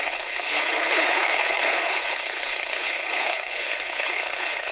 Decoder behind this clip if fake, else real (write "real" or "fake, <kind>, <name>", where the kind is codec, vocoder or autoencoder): fake, codec, HILCodec